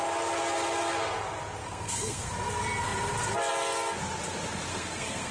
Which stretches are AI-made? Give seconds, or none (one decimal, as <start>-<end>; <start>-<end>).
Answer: 1.6-2.3; 4.7-5.3